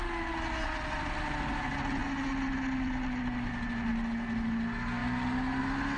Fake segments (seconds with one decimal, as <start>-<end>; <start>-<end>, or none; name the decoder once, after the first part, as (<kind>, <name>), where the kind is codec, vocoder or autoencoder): none